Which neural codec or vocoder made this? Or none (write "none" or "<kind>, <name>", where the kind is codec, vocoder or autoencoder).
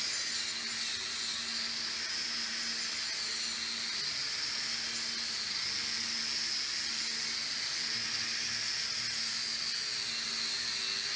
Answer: none